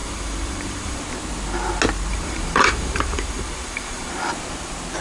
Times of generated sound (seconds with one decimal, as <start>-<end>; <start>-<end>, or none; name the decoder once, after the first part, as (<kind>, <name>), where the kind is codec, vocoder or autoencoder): 0.0-1.0 (vocoder, BigVGAN v2); 2.1-4.1